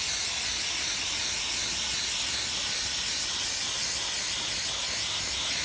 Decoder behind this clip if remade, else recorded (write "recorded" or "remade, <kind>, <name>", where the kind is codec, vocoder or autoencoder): recorded